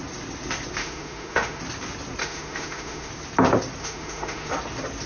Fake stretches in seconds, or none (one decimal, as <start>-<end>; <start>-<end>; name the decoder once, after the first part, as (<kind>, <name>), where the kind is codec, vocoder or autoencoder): 0.8-1.6 (autoencoder, DAC-VAE); 2.2-3.1; 3.8-4.5